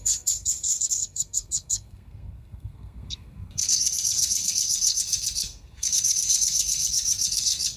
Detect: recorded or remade remade